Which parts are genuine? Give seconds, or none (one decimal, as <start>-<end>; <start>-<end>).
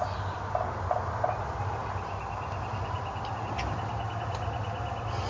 0.0-5.3